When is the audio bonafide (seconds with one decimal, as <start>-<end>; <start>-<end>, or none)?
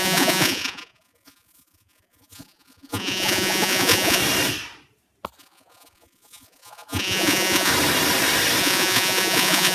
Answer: 4.2-5.4; 7.7-8.6